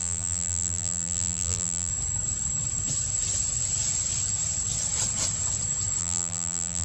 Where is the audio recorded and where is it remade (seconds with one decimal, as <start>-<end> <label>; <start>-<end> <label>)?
0.0-1.9 remade; 1.9-6.0 recorded; 6.0-6.8 remade

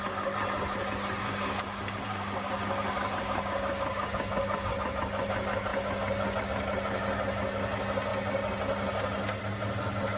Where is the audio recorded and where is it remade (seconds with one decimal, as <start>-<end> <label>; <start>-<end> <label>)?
0.0-1.2 recorded; 1.2-4.7 remade; 4.7-10.2 recorded

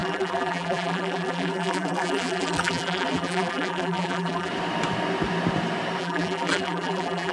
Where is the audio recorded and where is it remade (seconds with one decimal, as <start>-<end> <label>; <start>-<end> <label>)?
0.0-4.5 remade; 4.5-6.0 recorded; 6.0-7.3 remade

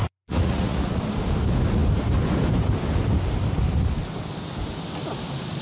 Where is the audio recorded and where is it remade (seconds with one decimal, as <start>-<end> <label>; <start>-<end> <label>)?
0.0-1.0 remade; 1.0-5.6 recorded

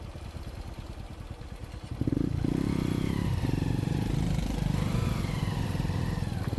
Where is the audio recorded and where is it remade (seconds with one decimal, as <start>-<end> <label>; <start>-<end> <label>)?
0.0-6.6 recorded